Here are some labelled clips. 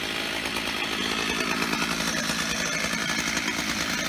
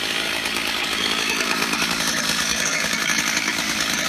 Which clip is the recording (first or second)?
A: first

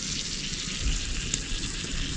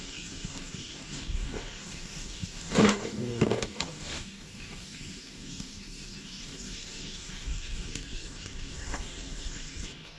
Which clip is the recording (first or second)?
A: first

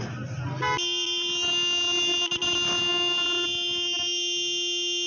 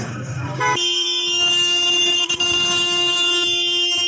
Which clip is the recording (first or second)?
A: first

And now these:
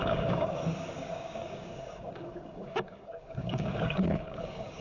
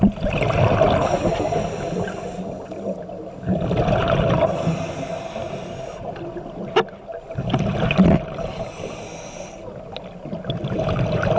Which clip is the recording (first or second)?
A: second